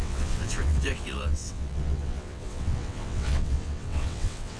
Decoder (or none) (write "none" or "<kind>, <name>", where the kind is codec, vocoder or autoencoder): vocoder, WaveNeXt